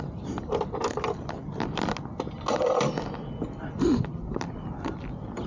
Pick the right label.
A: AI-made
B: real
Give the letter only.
B